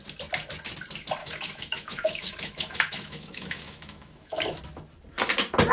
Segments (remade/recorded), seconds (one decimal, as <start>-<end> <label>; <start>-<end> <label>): 0.0-1.2 recorded; 1.2-4.6 remade; 4.6-5.7 recorded